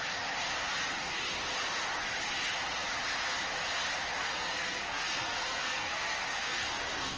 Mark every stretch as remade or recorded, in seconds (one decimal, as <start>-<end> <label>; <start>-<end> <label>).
0.0-4.2 recorded; 4.2-7.2 remade